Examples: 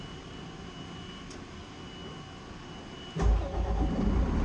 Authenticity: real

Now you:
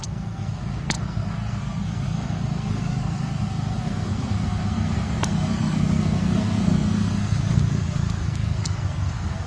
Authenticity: fake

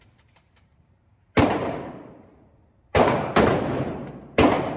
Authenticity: fake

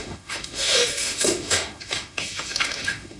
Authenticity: fake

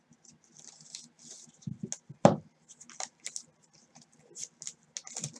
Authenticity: real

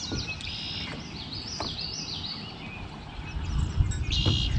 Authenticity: real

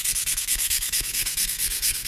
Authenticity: fake